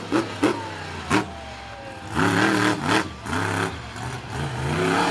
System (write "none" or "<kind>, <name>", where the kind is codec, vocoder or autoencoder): none